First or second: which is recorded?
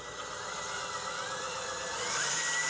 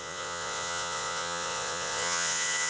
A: first